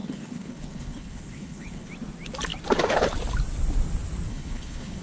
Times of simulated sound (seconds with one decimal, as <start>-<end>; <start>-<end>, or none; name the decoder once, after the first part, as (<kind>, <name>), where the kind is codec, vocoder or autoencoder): 0.0-1.9 (codec, HILCodec); 4.3-5.0